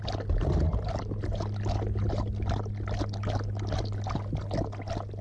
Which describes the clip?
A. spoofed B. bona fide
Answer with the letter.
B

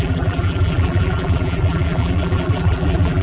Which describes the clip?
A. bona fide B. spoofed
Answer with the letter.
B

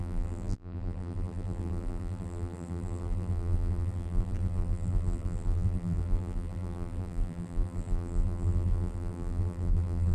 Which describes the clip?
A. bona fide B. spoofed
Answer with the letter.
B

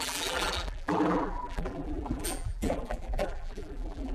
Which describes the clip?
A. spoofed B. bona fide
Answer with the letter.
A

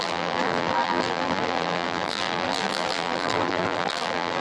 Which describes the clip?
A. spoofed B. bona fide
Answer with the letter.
A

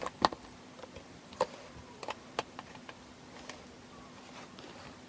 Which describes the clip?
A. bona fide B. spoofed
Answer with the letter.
A